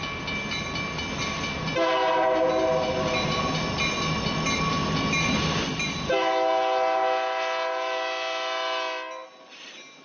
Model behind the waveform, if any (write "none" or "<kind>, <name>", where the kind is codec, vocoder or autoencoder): none